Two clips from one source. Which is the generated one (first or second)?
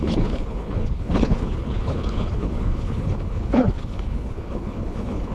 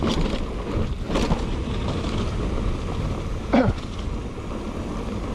first